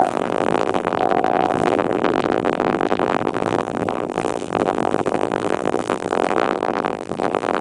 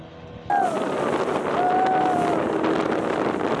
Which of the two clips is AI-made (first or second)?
first